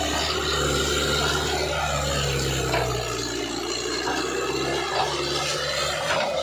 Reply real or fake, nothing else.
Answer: real